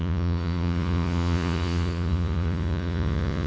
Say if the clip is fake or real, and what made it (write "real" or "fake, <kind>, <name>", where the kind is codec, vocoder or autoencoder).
fake, vocoder, Vocos